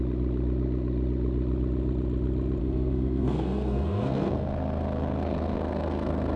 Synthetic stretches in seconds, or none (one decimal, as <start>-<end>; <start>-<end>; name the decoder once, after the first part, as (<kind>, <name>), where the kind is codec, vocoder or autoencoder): 2.6-6.4 (codec, SNAC)